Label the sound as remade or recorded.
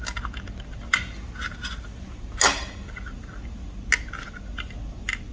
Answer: recorded